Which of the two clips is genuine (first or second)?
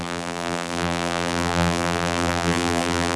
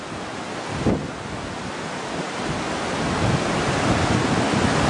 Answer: second